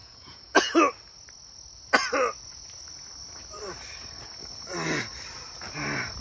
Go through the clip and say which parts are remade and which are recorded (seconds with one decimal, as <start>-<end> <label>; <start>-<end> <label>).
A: 0.0-0.7 remade; 0.7-6.2 recorded